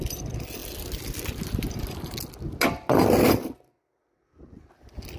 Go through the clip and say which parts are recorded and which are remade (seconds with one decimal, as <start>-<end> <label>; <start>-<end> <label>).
0.0-5.2 recorded